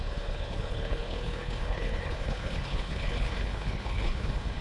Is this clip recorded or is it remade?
remade